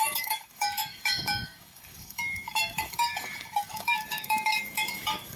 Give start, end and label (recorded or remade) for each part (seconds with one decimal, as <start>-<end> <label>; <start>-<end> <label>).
0.0-5.4 remade